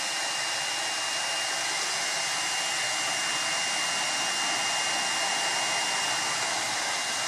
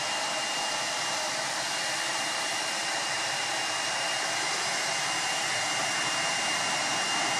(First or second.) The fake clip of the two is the second